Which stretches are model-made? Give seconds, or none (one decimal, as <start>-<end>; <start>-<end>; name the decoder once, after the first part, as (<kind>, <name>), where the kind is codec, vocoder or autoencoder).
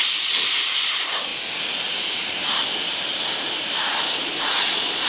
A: none